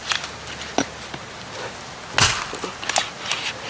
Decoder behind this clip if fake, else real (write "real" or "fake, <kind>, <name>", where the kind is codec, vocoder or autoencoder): real